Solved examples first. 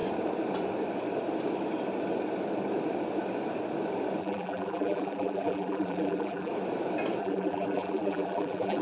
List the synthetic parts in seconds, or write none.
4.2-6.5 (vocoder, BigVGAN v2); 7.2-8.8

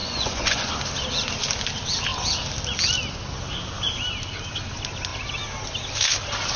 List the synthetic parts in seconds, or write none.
0.0-0.7 (vocoder, Vocos)

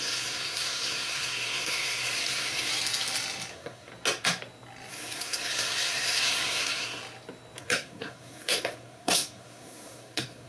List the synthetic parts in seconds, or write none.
0.0-2.7 (codec, SNAC); 3.5-3.9; 4.9-7.0; 7.6-10.5

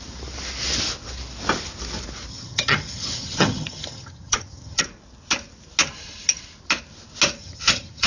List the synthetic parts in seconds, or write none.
2.3-4.8 (vocoder, HiFi-GAN); 7.4-8.1

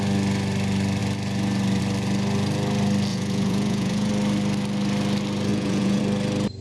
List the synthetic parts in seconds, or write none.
3.1-4.1 (vocoder, Vocos); 5.5-6.0